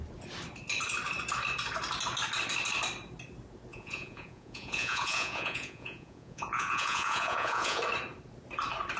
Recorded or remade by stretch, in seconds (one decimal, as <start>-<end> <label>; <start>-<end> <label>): 0.0-3.7 recorded; 3.7-7.8 remade; 7.8-9.0 recorded